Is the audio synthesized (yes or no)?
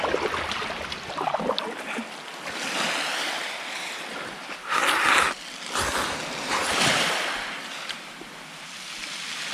no